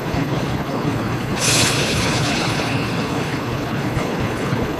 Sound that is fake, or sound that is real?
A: fake